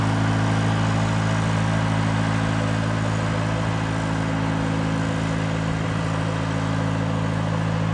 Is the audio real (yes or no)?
yes